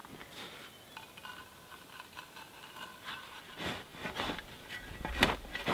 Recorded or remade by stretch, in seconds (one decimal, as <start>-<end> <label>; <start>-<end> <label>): 0.0-5.7 recorded